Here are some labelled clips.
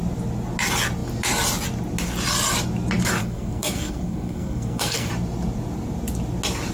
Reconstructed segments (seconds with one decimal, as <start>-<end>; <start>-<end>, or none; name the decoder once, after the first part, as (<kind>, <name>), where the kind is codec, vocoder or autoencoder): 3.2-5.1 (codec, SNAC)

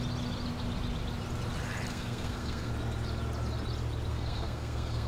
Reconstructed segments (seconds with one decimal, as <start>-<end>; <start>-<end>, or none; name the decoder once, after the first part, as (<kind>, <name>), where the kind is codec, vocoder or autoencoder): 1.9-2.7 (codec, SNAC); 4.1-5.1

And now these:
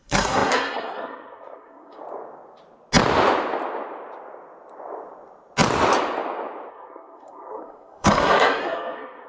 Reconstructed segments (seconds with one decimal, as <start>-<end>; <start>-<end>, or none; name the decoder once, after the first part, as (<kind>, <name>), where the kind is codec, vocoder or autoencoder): 0.0-2.0 (codec, SNAC); 6.7-9.3